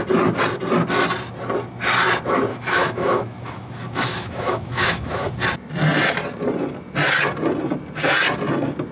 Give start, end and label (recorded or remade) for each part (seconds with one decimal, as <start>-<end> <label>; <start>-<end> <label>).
0.0-2.5 recorded; 2.5-5.3 remade; 5.3-8.9 recorded